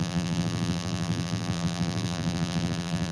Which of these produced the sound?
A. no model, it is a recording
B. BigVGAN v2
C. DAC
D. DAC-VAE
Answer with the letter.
B